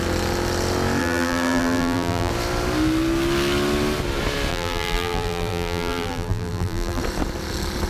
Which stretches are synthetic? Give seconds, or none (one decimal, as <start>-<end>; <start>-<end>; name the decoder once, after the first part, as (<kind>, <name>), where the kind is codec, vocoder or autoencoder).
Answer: 1.0-2.3 (vocoder, BigVGAN v2); 4.5-7.0